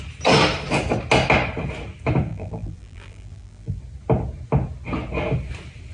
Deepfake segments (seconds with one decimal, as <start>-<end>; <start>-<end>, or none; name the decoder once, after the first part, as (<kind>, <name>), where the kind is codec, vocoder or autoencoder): 2.3-3.8 (vocoder, BigVGAN v2)